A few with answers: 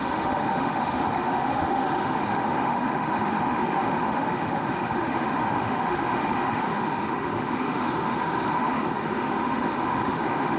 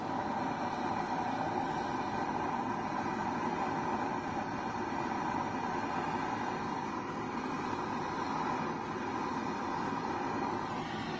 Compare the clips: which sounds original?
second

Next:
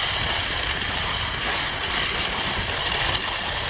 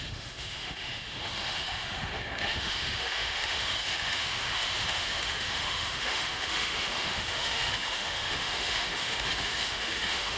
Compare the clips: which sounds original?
first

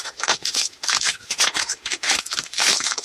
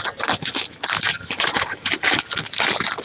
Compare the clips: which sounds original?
second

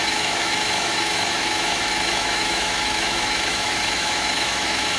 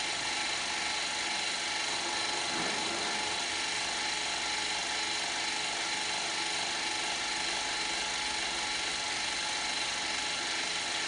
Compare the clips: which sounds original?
second